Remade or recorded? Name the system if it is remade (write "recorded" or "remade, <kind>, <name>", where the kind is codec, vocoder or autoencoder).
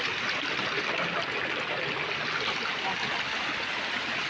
recorded